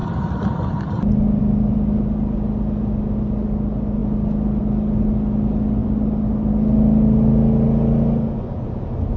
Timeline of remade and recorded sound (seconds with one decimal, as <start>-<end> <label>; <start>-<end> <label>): 0.0-9.2 recorded